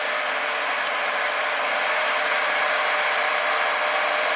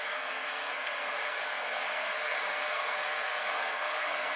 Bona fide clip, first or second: first